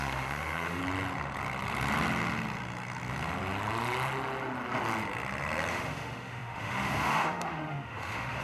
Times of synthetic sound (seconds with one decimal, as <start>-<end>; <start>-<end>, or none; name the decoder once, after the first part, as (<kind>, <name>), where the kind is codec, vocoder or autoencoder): 0.0-0.8 (autoencoder, DAC-VAE); 5.7-8.4